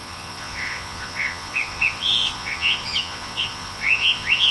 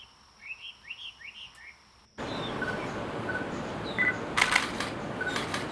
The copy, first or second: first